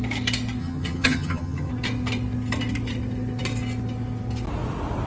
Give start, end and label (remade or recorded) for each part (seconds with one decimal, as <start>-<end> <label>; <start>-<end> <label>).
0.0-0.6 recorded; 0.6-1.7 remade; 1.7-5.1 recorded